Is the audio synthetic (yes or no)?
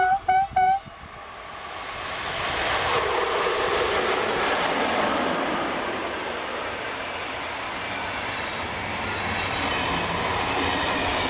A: no